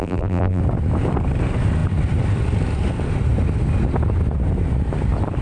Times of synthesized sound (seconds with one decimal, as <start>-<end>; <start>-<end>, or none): 0.0-0.6